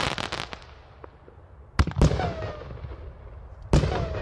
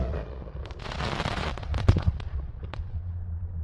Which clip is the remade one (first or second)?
second